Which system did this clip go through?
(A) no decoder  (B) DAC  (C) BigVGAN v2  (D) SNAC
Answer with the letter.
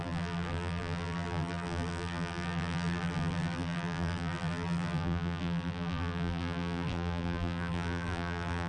C